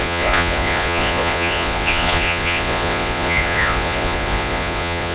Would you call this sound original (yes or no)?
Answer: no